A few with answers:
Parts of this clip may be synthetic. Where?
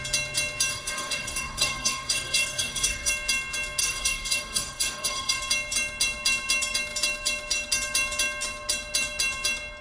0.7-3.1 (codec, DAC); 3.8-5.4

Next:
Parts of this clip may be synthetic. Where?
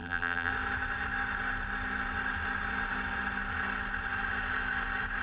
0.0-0.5 (vocoder, BigVGAN v2)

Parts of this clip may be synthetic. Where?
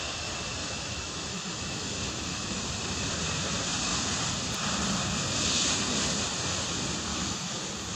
0.6-2.6 (autoencoder, DAC-VAE); 7.1-7.6